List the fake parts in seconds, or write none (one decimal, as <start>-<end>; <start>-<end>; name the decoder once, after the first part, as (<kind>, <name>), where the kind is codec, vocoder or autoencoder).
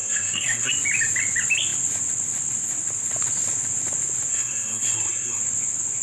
0.0-0.7 (codec, SNAC); 4.3-5.4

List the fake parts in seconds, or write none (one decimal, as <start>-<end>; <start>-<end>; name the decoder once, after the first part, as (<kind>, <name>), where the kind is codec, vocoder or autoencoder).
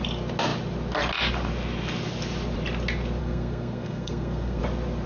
3.2-4.6 (codec, SNAC)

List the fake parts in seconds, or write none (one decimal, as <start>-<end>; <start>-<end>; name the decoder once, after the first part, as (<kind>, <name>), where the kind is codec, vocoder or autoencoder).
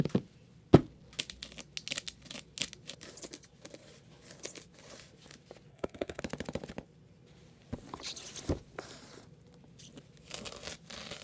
5.7-6.2 (codec, SNAC)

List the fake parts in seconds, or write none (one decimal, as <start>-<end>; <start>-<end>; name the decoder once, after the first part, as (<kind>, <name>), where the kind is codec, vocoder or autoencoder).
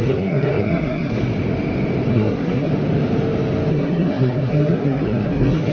0.0-1.2 (codec, SNAC); 2.1-2.7; 3.7-5.7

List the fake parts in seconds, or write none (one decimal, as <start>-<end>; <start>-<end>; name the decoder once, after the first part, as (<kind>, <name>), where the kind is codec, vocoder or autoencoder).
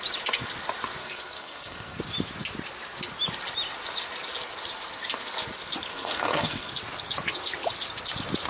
1.0-2.0 (codec, SNAC); 5.9-6.7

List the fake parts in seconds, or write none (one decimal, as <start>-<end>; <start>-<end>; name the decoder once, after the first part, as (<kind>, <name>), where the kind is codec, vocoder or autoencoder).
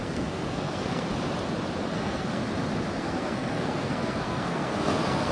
0.0-1.1 (codec, SNAC); 1.9-2.4; 3.0-5.3